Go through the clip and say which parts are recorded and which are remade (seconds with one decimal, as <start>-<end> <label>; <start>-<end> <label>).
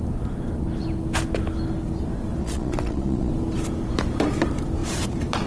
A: 0.0-2.4 recorded; 2.4-3.3 remade; 3.3-5.5 recorded